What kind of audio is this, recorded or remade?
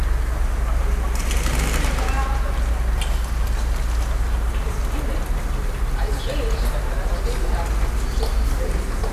recorded